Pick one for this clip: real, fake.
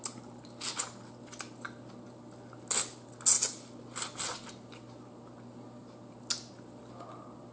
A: real